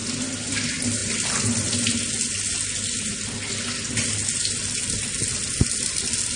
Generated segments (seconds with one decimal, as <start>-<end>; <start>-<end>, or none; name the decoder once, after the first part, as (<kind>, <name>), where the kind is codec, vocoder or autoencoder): none